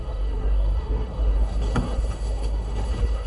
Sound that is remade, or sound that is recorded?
remade